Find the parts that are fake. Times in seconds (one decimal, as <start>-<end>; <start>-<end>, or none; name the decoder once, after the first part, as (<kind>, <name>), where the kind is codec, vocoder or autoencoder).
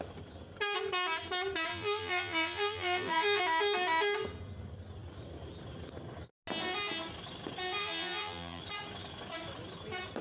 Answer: 1.7-3.4 (vocoder, BigVGAN v2); 7.8-8.6